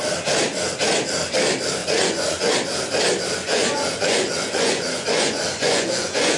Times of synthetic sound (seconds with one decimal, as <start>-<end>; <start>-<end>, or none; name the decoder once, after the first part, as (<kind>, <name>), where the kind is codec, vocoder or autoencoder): 1.8-2.5 (vocoder, Vocos); 3.4-6.4